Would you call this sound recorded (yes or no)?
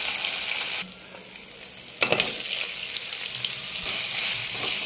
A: yes